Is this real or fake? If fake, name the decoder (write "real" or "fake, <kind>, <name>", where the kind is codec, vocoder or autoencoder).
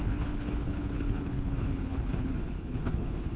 fake, codec, HILCodec